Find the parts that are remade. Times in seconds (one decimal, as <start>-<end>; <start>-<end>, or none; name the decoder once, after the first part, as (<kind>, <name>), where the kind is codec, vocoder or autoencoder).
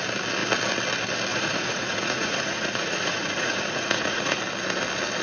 1.3-4.4 (vocoder, Vocos)